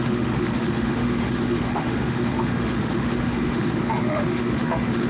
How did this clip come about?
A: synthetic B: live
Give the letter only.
A